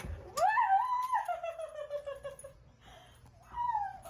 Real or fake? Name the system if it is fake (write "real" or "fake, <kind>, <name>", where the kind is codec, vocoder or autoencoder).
real